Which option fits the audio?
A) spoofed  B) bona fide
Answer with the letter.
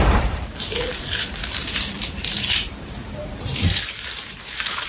A